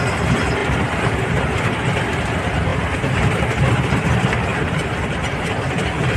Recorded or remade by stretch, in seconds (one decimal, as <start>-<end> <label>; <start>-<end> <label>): 0.0-0.6 recorded; 0.6-1.4 remade; 1.4-2.7 recorded; 2.7-4.1 remade; 4.1-4.5 recorded; 4.5-5.5 remade; 5.5-6.2 recorded